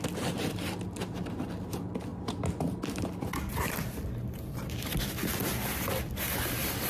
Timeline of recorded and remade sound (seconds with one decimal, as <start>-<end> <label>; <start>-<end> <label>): 0.0-6.9 recorded